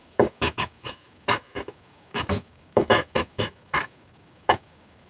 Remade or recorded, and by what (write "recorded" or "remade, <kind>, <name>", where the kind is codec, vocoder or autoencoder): remade, autoencoder, DAC-VAE